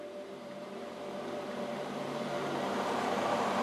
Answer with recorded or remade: remade